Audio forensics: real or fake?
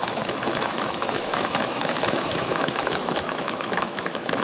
fake